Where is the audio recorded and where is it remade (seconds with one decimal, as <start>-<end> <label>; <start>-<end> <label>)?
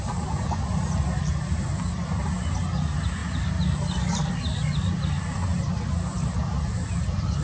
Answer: 0.0-7.4 recorded